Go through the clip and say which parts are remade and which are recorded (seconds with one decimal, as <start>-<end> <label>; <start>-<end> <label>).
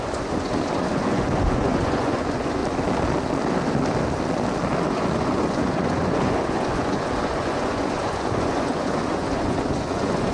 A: 0.0-2.6 remade; 2.6-4.9 recorded; 4.9-10.3 remade